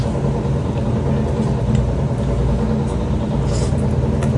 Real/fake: real